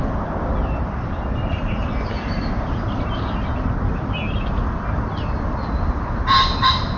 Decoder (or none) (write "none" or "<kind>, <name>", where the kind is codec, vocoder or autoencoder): none